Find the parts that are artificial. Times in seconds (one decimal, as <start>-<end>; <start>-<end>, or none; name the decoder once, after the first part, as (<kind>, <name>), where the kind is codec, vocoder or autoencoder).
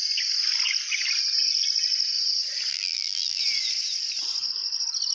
2.7-3.4 (vocoder, BigVGAN v2)